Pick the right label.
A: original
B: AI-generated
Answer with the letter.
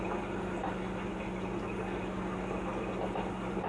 A